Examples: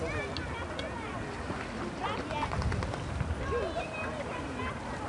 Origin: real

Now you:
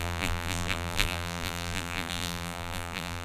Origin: fake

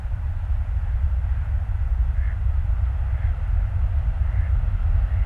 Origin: real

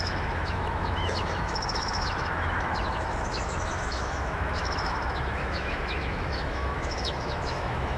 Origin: fake